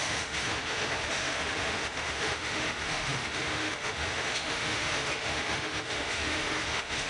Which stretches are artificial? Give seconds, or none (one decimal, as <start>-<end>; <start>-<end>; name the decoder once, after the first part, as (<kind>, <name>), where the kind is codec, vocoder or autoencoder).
0.0-7.1 (autoencoder, DAC-VAE)